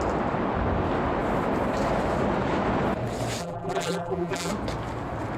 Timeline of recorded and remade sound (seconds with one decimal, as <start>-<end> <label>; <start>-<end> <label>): 0.0-3.4 recorded; 3.4-4.5 remade; 4.5-5.4 recorded